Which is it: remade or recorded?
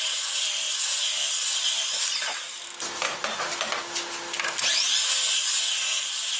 recorded